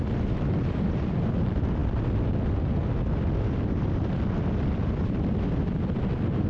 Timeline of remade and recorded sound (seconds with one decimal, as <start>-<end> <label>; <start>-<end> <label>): 0.0-6.5 recorded